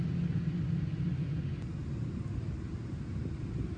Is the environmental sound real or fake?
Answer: real